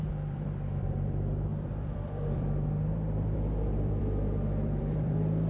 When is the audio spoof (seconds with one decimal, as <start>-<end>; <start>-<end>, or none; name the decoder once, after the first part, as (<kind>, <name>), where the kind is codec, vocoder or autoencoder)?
0.0-5.5 (vocoder, BigVGAN v2)